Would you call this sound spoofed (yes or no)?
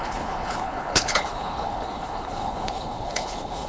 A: yes